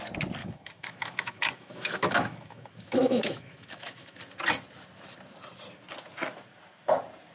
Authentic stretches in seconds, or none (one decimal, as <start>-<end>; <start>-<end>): 0.0-0.4; 4.2-7.3